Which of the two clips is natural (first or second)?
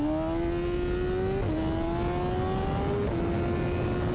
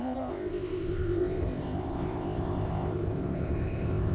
first